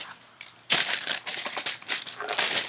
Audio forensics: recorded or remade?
recorded